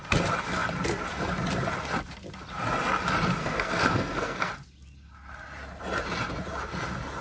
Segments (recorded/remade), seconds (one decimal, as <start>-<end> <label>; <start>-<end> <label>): 0.0-3.4 recorded; 3.4-4.5 remade; 4.5-7.2 recorded